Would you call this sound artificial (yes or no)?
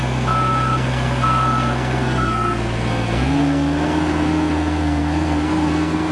yes